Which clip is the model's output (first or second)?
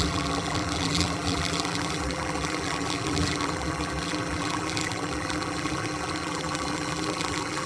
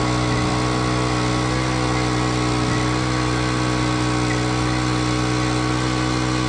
first